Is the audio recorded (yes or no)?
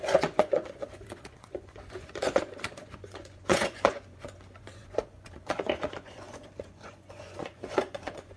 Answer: no